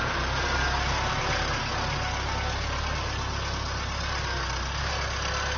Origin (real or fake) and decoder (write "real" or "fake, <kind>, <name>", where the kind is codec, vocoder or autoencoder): real